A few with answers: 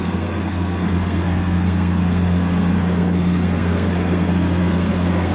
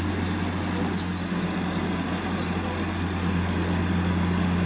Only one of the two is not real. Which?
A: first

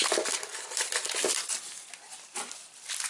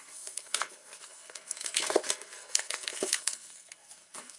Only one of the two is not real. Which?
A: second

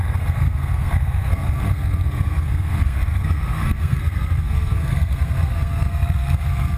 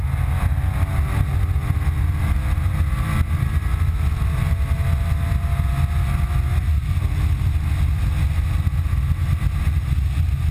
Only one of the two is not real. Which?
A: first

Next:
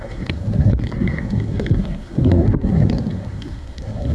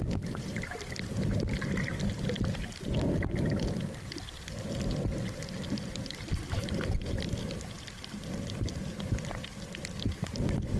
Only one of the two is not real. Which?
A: first